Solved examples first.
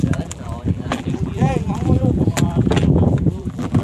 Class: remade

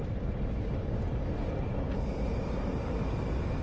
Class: recorded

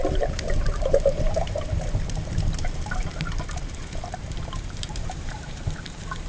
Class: remade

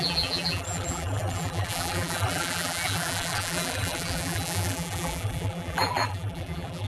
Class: remade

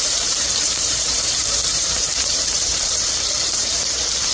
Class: remade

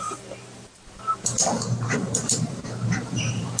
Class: remade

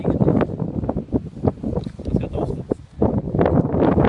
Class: recorded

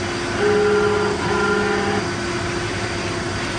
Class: recorded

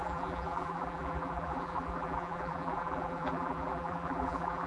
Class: remade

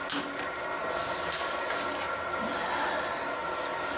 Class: recorded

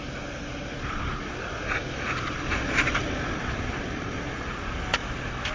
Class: recorded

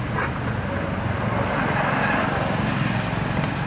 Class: recorded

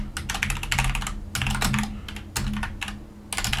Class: recorded